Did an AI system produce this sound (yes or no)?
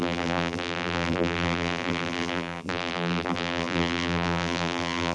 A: yes